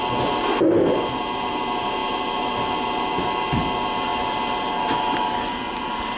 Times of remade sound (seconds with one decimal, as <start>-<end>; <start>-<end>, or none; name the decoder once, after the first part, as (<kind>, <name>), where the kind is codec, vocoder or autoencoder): none